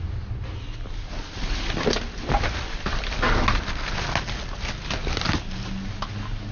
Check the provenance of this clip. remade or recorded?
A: recorded